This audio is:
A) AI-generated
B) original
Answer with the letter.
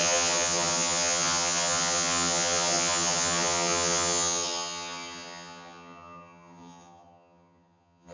A